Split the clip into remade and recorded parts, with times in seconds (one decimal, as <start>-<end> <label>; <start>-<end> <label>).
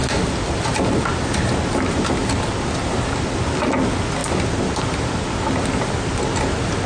0.0-6.9 recorded